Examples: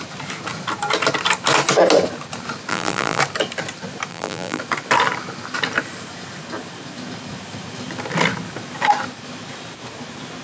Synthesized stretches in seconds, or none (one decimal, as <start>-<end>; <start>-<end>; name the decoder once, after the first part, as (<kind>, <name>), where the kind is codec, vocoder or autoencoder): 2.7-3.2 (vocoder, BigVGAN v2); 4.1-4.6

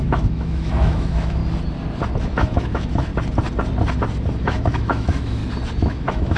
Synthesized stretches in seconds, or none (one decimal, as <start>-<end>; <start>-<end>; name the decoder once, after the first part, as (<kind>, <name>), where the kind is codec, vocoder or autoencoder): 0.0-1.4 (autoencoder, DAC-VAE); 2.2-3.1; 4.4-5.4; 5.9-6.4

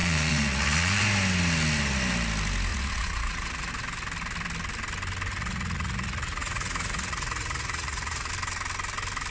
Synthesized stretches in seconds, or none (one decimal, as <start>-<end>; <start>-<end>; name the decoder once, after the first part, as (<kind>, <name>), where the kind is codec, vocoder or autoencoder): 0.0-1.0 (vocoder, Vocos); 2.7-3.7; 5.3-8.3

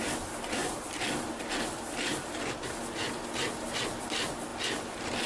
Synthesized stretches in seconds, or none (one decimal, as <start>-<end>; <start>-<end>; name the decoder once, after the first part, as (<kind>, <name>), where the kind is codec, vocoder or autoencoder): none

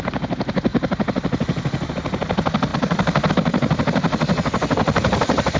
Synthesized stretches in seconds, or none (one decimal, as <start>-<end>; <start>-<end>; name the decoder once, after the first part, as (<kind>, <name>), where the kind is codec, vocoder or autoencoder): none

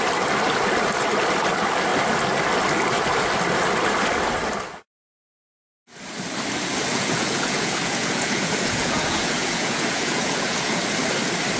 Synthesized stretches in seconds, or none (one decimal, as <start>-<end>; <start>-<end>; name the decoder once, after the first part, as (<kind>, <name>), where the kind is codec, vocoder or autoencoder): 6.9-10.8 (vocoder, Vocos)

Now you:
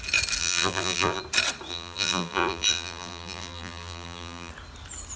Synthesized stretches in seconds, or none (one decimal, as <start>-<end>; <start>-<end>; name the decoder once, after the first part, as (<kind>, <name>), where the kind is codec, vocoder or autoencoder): 0.4-1.2 (vocoder, BigVGAN v2); 1.7-4.5